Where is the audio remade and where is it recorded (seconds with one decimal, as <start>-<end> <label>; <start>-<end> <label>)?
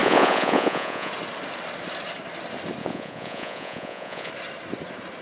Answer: 0.0-1.1 remade; 1.1-2.8 recorded; 2.8-4.3 remade; 4.3-5.2 recorded